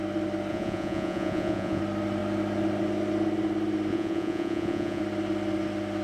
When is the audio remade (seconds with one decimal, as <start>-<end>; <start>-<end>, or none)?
0.5-1.8; 3.9-5.0